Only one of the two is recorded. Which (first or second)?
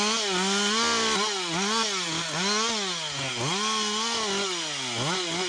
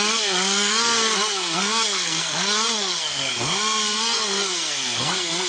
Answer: first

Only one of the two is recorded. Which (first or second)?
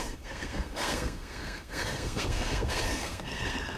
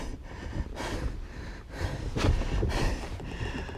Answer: second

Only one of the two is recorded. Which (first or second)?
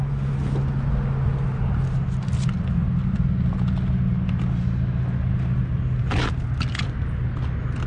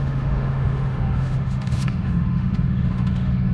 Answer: first